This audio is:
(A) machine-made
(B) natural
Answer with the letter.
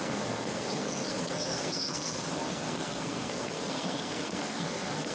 A